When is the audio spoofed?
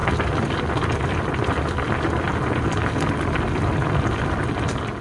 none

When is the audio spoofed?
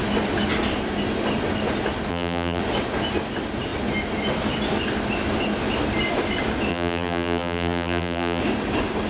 2.1-2.6; 6.7-8.4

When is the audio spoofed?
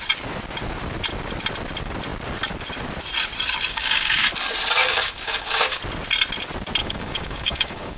3.7-4.3; 4.8-5.8; 6.8-8.0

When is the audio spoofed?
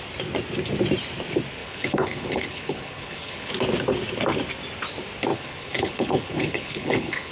1.6-3.5; 5.3-7.3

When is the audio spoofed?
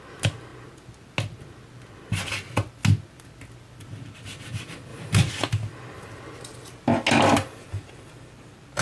none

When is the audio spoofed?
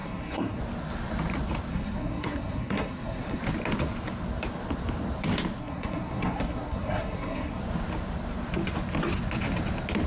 0.0-0.6; 1.7-3.4; 5.6-7.6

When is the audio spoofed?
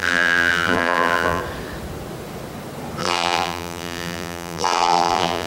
0.0-1.4; 3.0-5.5